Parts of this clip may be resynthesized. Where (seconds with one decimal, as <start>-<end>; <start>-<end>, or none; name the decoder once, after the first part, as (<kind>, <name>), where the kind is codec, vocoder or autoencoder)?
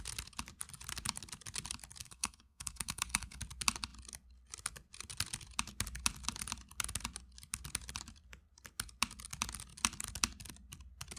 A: 2.0-3.4 (codec, SNAC)